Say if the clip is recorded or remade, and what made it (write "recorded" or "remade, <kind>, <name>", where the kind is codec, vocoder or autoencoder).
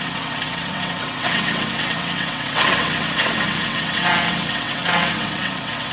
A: remade, vocoder, WaveNeXt